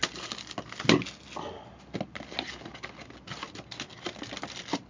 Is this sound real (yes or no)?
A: yes